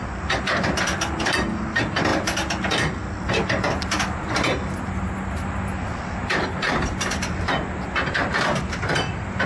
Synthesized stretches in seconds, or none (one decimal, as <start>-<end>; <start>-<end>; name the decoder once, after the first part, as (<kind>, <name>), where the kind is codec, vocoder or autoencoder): none